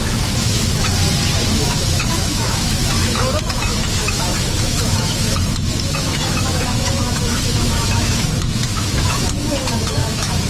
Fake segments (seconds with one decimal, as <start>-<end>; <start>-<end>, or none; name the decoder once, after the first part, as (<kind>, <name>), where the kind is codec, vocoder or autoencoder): 0.0-0.9 (autoencoder, DAC-VAE); 1.6-10.5